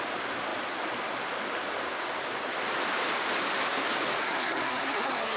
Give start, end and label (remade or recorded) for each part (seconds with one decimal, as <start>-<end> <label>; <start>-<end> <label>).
0.0-4.2 recorded; 4.2-5.4 remade